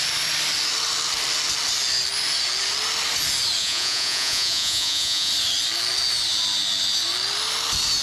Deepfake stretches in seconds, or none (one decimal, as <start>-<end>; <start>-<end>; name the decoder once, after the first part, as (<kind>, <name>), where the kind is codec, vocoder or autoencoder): 3.6-5.3 (vocoder, Vocos)